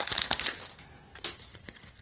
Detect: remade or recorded recorded